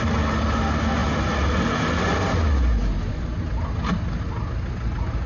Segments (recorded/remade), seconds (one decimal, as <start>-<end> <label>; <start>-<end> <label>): 0.0-5.3 recorded